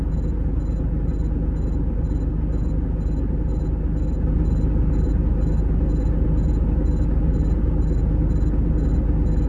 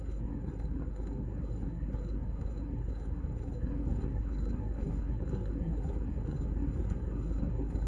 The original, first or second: first